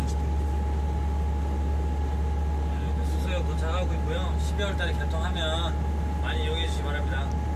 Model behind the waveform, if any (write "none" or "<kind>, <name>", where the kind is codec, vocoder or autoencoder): none